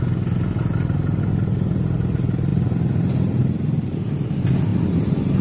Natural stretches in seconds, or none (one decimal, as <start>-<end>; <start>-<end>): 0.0-5.4